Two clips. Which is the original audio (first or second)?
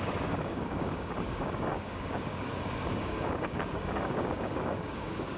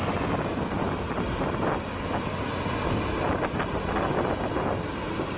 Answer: second